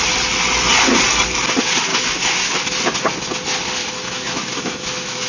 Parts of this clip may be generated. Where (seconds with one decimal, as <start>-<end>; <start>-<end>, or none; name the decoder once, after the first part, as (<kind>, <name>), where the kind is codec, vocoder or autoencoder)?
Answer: 1.9-2.4 (autoencoder, DAC-VAE); 3.8-5.3